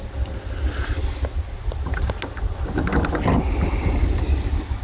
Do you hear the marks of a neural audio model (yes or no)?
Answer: no